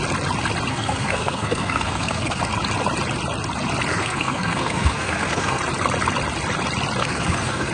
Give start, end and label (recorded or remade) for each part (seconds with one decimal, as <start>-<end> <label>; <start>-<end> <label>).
0.0-0.7 recorded; 0.7-2.4 remade; 2.4-3.9 recorded; 3.9-5.6 remade; 5.6-7.0 recorded; 7.0-7.7 remade